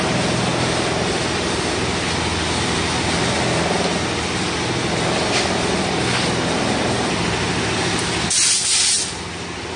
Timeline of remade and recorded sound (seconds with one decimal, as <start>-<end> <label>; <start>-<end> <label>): 0.0-9.8 recorded